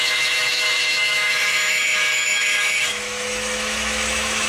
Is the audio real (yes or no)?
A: no